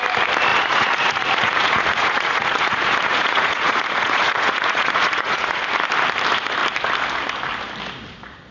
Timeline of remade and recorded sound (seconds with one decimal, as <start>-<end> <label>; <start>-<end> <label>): 0.0-0.5 recorded; 0.5-5.6 remade; 5.6-8.5 recorded